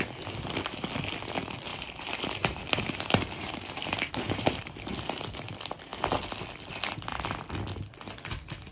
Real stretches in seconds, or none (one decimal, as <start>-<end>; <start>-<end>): 0.0-1.7; 4.9-8.7